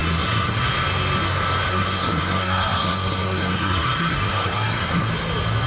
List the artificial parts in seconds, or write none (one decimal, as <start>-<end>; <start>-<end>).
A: 0.0-0.7; 1.7-5.1